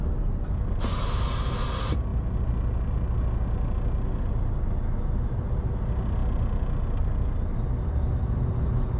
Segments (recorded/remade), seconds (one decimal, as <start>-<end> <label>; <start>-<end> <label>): 0.0-9.0 recorded